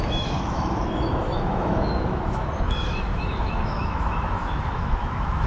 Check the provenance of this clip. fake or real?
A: fake